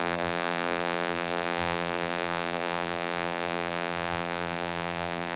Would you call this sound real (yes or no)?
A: no